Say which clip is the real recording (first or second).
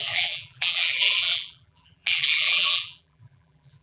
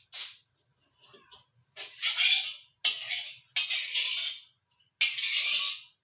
second